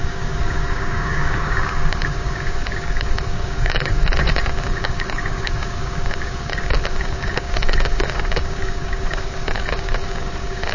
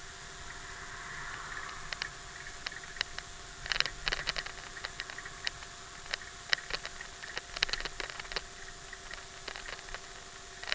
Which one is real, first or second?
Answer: second